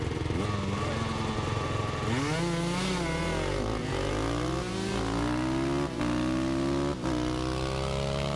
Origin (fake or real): real